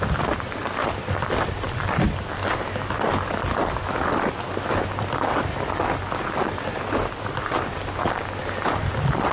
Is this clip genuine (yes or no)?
yes